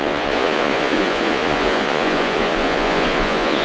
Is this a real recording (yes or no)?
no